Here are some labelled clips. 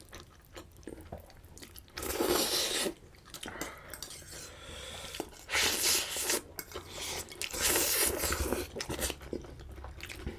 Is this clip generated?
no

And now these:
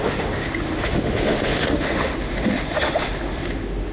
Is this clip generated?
yes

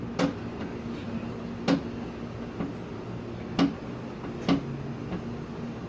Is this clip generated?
no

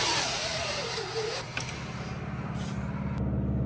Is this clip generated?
no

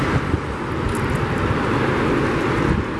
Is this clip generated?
no